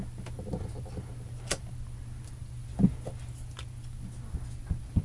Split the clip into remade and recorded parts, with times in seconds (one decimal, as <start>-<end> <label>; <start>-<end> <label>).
0.0-5.0 recorded